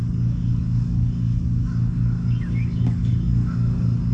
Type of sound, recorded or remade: remade